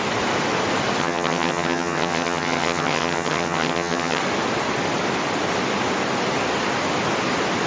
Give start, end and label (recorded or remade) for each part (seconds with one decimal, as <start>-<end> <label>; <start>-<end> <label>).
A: 0.0-1.0 recorded; 1.0-4.2 remade; 4.2-7.7 recorded